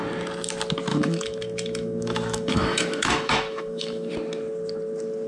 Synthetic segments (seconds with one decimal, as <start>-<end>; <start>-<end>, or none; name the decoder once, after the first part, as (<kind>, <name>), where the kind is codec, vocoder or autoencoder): 0.9-4.1 (autoencoder, DAC-VAE)